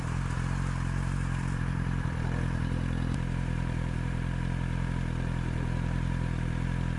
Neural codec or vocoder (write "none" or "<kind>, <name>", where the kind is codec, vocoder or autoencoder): vocoder, BigVGAN v2